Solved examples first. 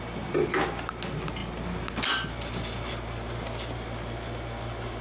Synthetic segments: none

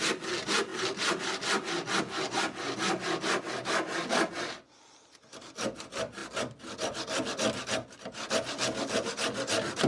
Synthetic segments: none

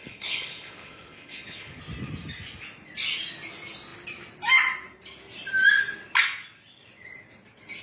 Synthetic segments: 0.0-1.8